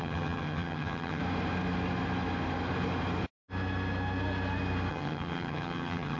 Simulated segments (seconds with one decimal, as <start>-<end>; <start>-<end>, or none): 0.0-1.2; 4.9-6.2